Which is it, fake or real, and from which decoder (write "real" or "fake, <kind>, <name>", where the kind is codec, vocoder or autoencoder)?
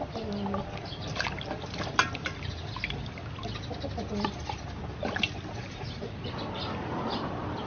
real